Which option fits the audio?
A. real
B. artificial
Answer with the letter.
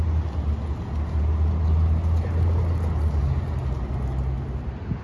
A